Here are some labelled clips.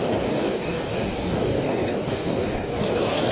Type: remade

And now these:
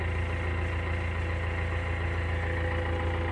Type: recorded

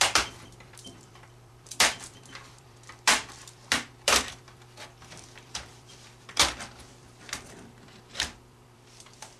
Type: remade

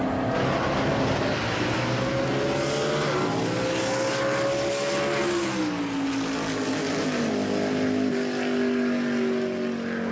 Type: recorded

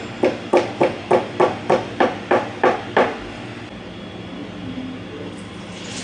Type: recorded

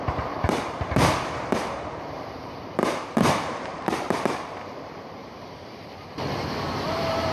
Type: remade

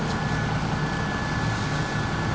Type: recorded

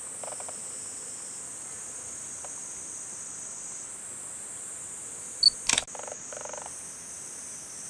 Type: recorded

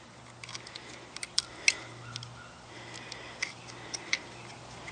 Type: recorded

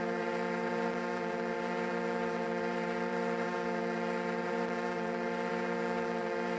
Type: remade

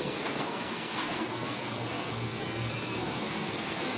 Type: remade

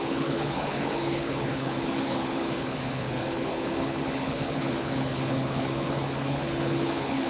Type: remade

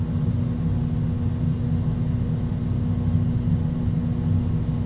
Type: recorded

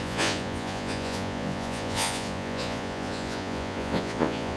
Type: remade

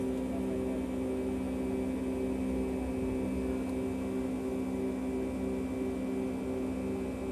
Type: recorded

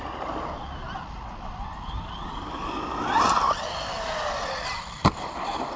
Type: recorded